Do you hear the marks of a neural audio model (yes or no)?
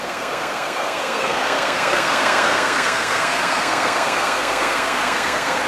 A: yes